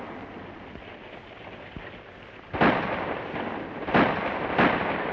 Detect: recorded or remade recorded